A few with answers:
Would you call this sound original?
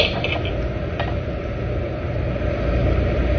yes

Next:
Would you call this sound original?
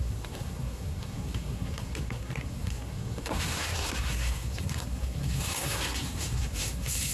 no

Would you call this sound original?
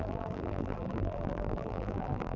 no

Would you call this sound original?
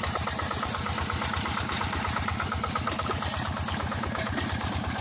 no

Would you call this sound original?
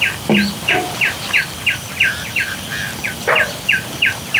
no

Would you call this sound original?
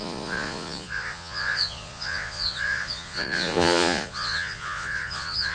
no